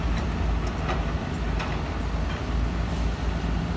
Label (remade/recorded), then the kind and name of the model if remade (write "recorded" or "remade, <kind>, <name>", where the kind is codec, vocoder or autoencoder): recorded